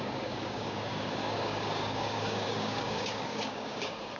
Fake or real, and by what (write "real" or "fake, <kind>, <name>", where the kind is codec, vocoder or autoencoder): fake, codec, DAC